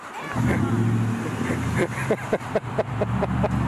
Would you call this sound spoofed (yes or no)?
no